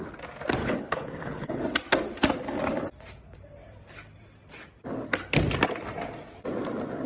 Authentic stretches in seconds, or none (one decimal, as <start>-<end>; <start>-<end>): 0.0-0.6; 1.6-7.1